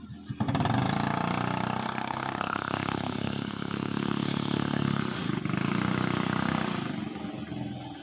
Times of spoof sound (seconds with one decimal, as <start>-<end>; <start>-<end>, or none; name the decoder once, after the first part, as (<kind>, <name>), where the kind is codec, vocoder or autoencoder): 1.8-5.0 (codec, SNAC)